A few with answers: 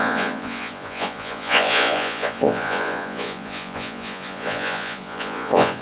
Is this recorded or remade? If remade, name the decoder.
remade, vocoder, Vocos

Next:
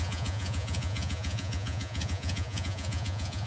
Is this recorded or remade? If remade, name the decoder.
remade, vocoder, Vocos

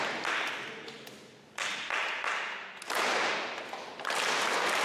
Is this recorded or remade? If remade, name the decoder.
recorded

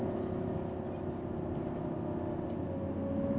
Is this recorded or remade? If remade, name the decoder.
recorded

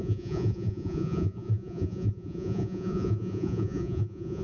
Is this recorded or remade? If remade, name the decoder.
remade, vocoder, Vocos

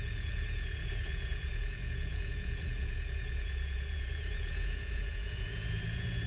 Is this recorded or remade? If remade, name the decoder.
remade, vocoder, Vocos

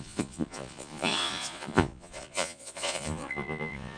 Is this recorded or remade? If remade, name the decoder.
remade, vocoder, Vocos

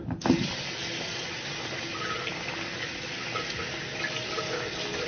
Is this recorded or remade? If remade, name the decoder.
recorded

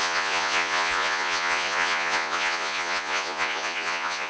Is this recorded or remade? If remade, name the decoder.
remade, vocoder, Vocos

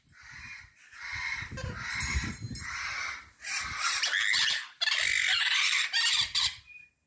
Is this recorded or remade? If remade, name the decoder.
recorded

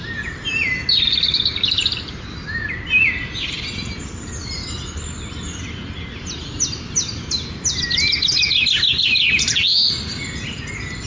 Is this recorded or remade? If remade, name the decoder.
recorded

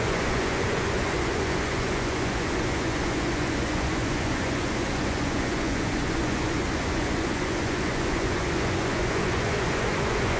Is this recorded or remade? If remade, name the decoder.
remade, vocoder, Vocos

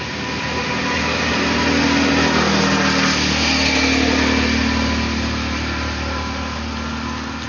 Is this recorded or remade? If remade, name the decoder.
recorded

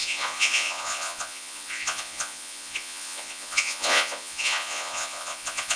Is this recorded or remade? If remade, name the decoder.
remade, vocoder, Vocos